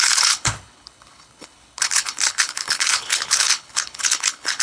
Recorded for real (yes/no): no